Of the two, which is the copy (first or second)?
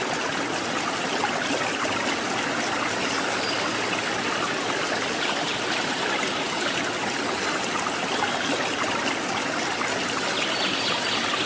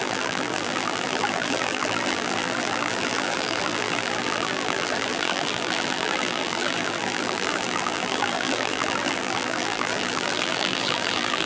second